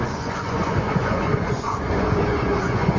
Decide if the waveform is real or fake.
fake